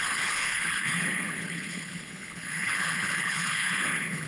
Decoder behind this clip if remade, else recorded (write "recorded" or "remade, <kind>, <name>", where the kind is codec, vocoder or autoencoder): remade, codec, HILCodec